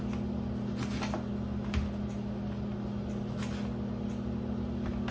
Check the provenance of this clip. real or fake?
real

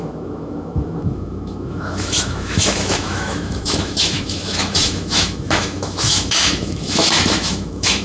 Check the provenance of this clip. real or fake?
fake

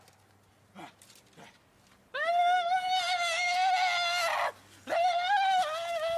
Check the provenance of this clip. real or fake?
real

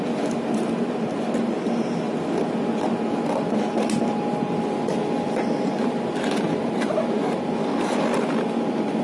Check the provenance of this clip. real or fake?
real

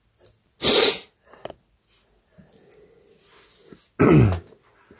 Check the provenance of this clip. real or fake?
real